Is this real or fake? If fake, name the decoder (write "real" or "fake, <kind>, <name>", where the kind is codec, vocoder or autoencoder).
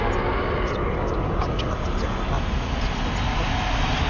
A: real